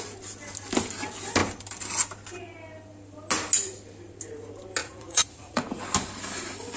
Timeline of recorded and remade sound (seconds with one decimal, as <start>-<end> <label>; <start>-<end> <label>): 0.0-4.8 recorded; 4.8-5.8 remade; 5.8-6.8 recorded